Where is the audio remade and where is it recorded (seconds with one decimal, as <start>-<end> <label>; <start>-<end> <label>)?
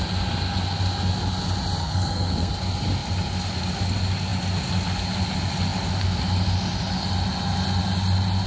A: 0.0-1.8 recorded; 1.8-2.5 remade; 2.5-8.5 recorded